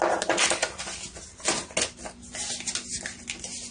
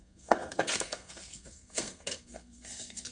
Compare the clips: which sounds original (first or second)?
first